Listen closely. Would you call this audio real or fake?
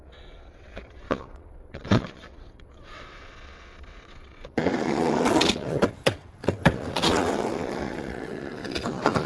fake